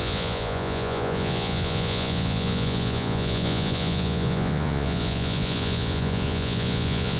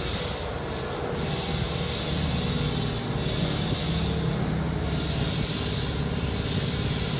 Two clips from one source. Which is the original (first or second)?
second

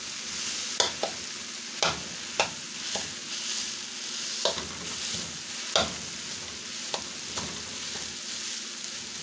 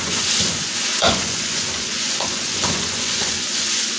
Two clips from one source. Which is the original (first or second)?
first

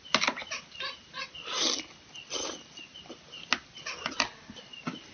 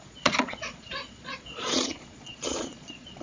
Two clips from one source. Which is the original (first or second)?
first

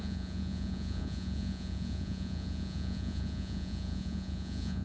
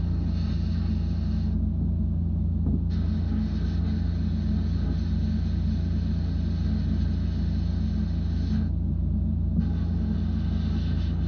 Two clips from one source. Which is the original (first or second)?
second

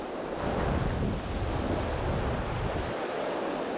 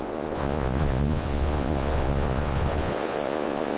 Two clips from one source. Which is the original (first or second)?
first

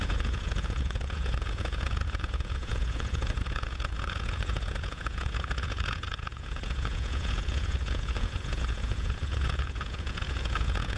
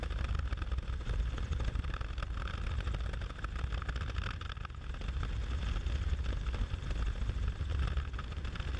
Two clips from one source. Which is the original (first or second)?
second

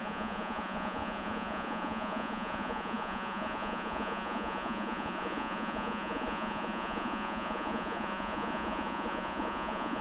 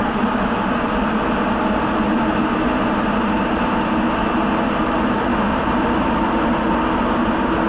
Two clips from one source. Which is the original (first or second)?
second